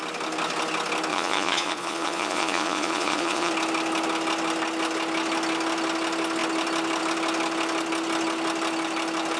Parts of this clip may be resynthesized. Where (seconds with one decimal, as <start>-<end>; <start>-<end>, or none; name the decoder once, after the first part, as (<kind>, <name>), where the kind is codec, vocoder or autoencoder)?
1.1-3.5 (vocoder, Vocos)